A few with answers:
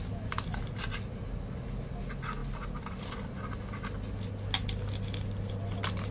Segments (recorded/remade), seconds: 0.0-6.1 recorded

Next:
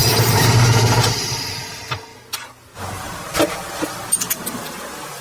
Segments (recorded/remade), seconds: 0.0-0.6 remade; 0.6-5.2 recorded

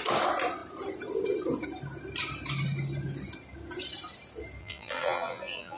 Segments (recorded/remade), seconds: 0.0-4.6 recorded; 4.6-5.8 remade